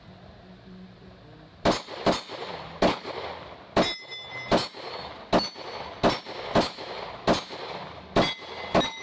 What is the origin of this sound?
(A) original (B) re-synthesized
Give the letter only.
A